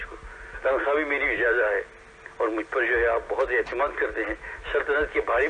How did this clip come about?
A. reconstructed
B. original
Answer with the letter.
B